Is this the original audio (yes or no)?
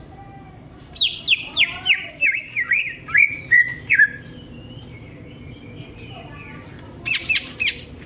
no